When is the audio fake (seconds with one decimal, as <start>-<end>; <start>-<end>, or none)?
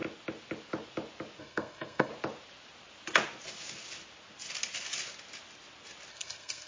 1.4-2.1; 6.1-6.7